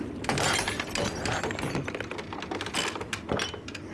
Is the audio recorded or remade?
recorded